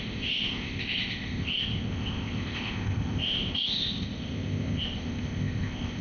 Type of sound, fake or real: fake